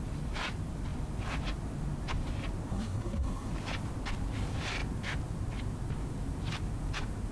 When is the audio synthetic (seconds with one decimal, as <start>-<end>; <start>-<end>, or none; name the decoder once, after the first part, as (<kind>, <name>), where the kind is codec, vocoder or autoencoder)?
2.7-3.5 (codec, SNAC)